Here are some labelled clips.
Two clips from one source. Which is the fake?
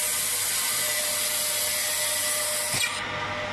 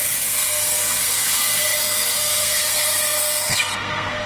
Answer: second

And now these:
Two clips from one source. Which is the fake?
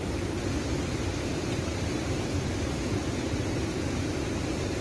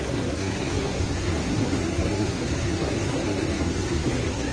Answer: second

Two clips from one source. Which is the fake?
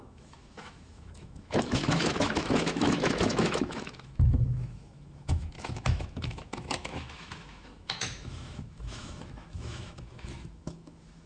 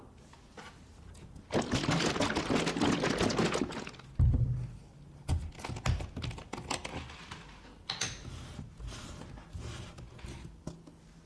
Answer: first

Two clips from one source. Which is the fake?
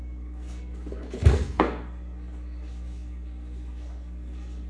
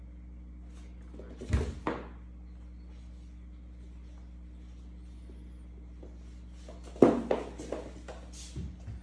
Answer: first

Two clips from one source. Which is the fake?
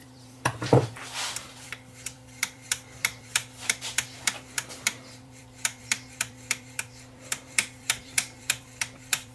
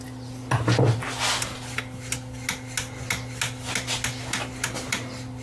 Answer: first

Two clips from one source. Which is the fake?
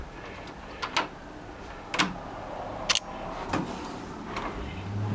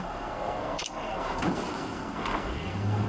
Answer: second